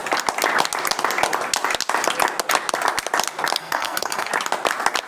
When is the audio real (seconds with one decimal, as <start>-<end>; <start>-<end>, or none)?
0.0-3.6; 4.3-5.1